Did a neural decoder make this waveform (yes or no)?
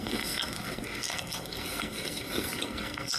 yes